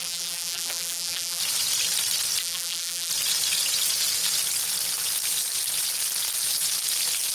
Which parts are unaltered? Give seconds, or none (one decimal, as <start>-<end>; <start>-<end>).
1.4-2.4; 3.1-7.3